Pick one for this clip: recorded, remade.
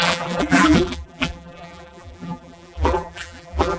remade